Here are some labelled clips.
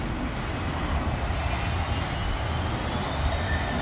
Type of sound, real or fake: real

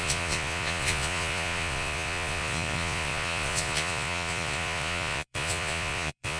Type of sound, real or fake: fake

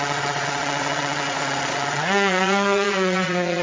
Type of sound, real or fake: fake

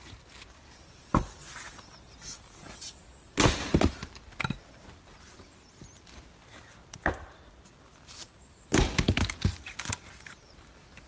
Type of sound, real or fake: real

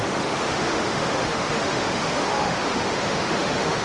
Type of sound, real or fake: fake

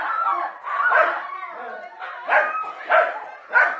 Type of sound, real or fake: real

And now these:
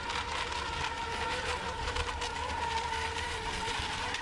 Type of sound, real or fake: real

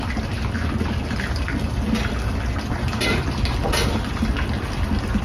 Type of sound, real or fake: real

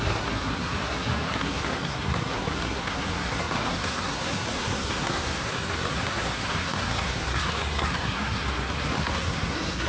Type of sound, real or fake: fake